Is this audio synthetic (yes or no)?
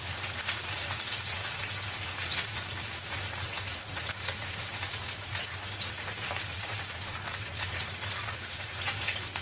yes